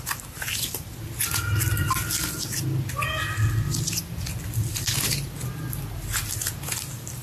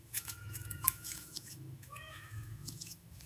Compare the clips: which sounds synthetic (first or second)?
second